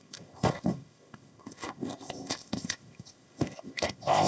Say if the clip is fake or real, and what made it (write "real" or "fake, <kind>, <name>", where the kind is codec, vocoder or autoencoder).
fake, codec, ZipCodec